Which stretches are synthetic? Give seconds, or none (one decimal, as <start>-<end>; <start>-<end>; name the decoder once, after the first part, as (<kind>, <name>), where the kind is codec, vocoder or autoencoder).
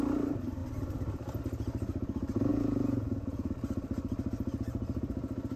2.5-3.5 (vocoder, Vocos)